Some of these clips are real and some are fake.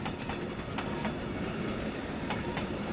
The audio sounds real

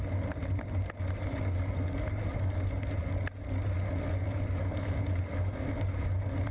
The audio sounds real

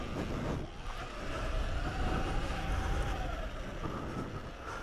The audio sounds real